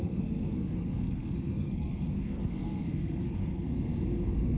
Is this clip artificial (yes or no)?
yes